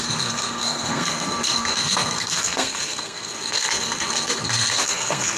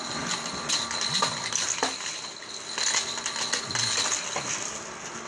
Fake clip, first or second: first